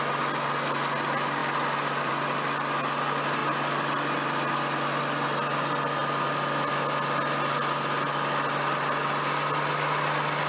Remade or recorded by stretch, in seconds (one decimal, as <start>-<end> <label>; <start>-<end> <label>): 0.0-10.5 recorded